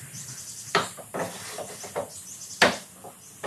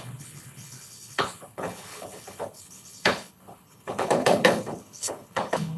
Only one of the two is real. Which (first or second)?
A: first